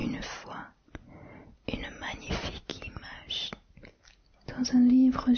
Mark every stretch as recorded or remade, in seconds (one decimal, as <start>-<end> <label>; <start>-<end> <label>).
0.0-5.4 recorded